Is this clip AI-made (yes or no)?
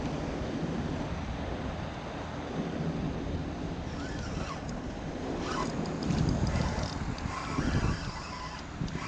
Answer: no